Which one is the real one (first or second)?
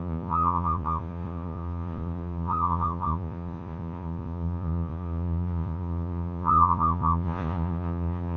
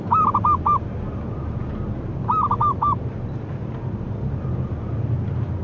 second